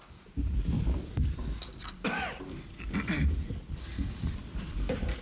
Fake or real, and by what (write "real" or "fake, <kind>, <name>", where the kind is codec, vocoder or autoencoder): fake, vocoder, BigVGAN v2